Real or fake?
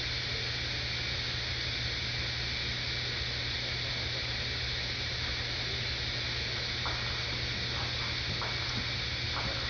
real